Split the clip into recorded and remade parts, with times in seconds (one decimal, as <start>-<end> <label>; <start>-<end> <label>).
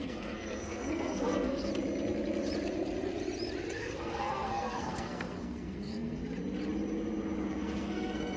0.0-1.7 remade; 1.7-3.8 recorded; 3.8-6.2 remade; 6.2-7.5 recorded; 7.5-8.4 remade